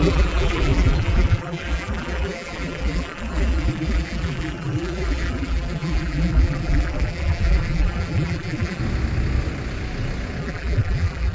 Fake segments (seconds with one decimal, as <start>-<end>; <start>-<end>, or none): 0.0-8.8; 10.4-11.3